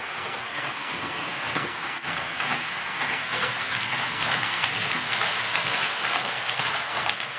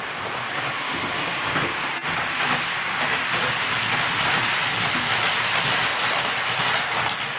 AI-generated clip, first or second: first